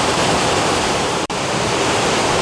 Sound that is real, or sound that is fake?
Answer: fake